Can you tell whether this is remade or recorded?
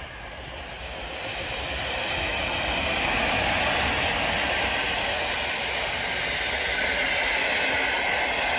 recorded